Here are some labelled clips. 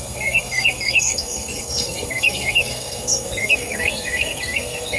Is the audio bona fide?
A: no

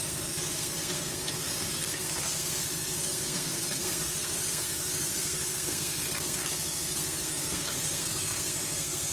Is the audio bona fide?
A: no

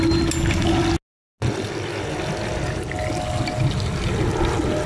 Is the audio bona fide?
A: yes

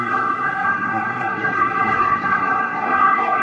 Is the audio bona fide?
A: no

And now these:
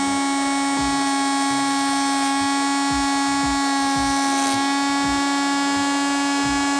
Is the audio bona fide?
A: yes